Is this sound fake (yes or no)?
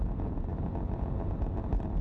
no